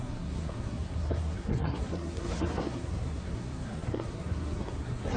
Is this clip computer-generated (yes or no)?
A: yes